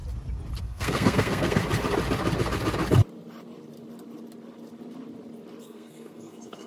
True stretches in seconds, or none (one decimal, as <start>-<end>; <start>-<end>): 0.0-0.6; 1.6-5.6